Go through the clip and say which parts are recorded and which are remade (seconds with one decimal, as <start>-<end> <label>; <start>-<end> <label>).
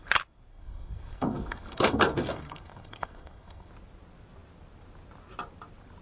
0.0-0.5 recorded; 0.5-3.7 remade; 3.7-6.0 recorded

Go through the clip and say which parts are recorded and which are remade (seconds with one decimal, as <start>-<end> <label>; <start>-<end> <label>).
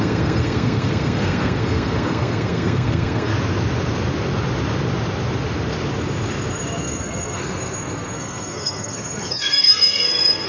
0.0-3.3 remade; 3.3-6.8 recorded; 6.8-10.5 remade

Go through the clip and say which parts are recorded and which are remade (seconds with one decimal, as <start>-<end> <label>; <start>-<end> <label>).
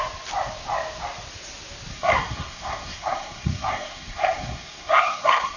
0.0-1.9 recorded; 1.9-5.6 remade